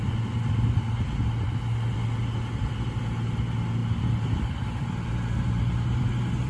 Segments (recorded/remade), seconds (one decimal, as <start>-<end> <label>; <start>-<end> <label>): 0.0-6.5 recorded